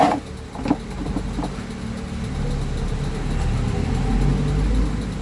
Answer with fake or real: real